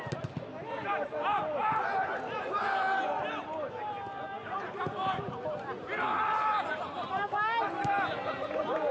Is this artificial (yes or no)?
no